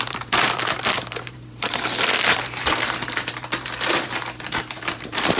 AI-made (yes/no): yes